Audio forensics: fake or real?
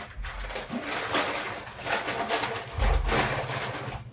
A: real